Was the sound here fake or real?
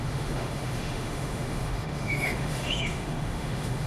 fake